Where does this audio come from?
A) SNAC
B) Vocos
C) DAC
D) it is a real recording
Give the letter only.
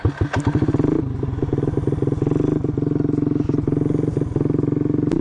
D